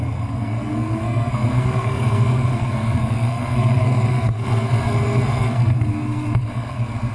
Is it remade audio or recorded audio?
remade